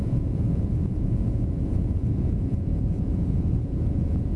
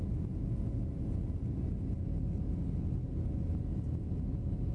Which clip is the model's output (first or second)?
first